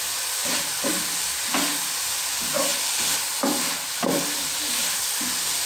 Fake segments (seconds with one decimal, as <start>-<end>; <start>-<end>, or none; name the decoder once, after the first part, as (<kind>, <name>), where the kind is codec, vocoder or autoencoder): none